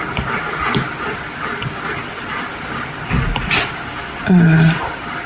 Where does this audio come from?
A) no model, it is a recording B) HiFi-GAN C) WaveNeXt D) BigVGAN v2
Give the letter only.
A